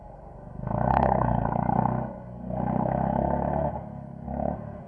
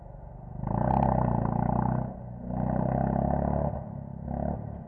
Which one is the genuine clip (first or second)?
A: second